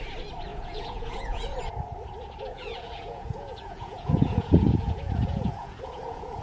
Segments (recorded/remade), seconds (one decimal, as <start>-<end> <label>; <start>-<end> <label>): 0.0-0.5 recorded; 0.5-1.4 remade; 1.4-2.5 recorded; 2.5-6.4 remade